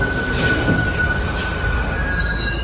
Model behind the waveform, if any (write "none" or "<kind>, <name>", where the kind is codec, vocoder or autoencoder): none